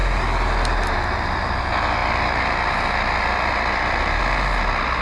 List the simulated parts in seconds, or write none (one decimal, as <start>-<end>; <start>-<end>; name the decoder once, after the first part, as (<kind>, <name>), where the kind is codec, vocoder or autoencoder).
none